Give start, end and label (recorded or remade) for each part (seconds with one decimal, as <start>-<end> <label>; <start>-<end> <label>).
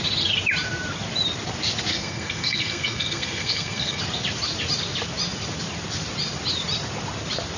0.0-1.9 recorded; 1.9-4.0 remade; 4.0-7.6 recorded